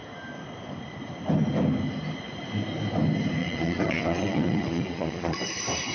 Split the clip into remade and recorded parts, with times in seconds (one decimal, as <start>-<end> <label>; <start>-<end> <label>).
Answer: 0.0-3.4 recorded; 3.4-5.4 remade; 5.4-5.9 recorded